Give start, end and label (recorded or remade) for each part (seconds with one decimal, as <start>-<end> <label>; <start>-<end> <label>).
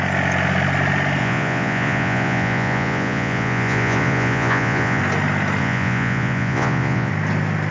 0.0-1.2 recorded; 1.2-5.0 remade; 5.0-5.6 recorded; 5.6-7.1 remade; 7.1-7.7 recorded